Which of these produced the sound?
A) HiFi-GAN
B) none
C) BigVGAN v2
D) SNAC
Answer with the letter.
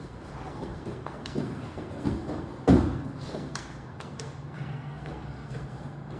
D